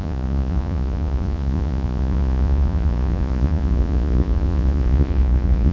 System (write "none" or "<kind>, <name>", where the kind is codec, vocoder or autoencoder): vocoder, Vocos